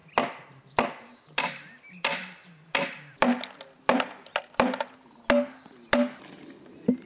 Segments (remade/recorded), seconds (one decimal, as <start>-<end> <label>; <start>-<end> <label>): 0.0-7.1 recorded